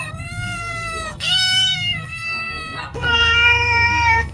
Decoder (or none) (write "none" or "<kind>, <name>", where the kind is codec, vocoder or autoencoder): codec, SNAC